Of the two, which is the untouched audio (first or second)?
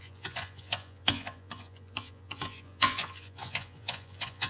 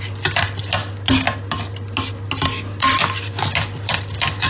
second